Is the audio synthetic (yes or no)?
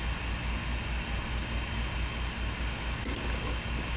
no